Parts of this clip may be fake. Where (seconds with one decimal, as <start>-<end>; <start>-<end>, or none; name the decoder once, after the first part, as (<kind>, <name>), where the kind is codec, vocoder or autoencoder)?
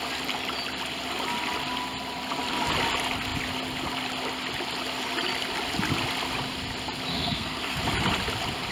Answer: 7.1-7.8 (codec, SNAC)